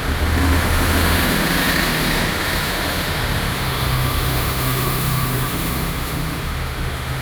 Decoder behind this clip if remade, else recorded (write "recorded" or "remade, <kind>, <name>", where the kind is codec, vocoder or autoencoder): remade, autoencoder, DAC-VAE